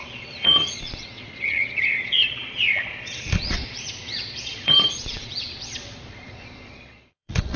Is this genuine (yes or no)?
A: no